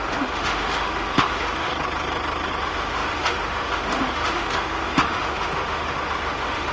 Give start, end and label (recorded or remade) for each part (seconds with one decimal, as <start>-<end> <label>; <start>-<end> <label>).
0.0-1.7 remade; 1.7-2.6 recorded; 2.6-6.7 remade